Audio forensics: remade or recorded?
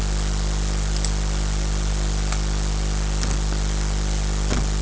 recorded